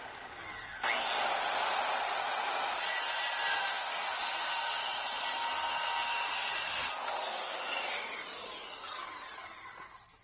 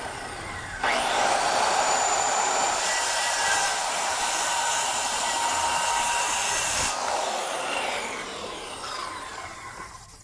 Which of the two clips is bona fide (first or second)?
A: first